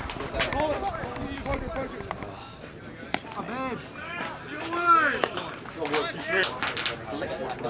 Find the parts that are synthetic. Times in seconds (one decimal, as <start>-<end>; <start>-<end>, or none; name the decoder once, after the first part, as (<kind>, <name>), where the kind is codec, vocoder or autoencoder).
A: none